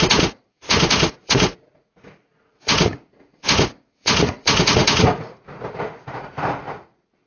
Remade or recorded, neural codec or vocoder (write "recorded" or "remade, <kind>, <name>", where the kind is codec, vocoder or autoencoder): remade, vocoder, Vocos